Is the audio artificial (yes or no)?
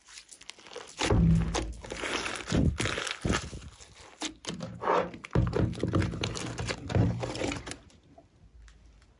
no